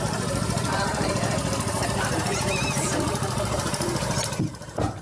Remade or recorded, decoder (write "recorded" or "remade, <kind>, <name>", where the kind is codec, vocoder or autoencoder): remade, vocoder, BigVGAN v2